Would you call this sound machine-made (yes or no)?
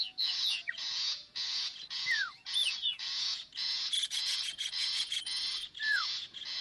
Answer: yes